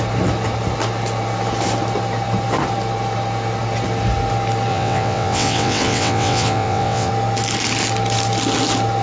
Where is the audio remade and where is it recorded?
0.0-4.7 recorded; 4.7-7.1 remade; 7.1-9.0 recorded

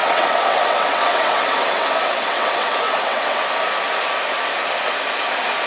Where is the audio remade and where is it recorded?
0.0-3.4 remade; 3.4-5.7 recorded

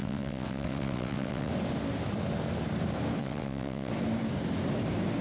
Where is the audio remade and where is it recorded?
0.0-1.5 remade; 1.5-3.2 recorded; 3.2-3.9 remade; 3.9-5.2 recorded

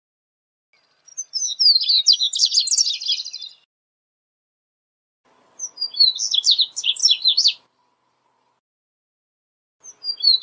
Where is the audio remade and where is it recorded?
0.0-10.4 recorded

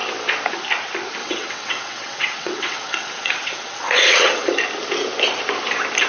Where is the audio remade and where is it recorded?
0.0-1.2 recorded; 1.2-4.5 remade; 4.5-6.1 recorded